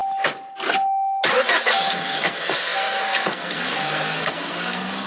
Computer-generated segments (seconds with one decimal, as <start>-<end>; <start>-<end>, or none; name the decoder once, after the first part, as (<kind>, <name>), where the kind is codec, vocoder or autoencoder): 1.7-5.1 (codec, SNAC)